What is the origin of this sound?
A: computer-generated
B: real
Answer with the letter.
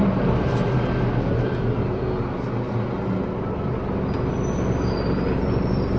B